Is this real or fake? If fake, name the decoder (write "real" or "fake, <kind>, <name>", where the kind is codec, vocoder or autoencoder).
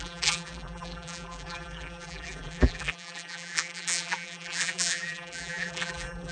fake, vocoder, BigVGAN v2